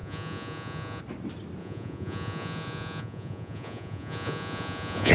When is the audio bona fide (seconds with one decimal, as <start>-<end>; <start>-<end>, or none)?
1.0-1.6